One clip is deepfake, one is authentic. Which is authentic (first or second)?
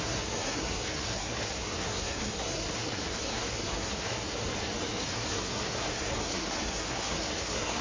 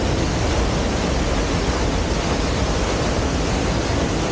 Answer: second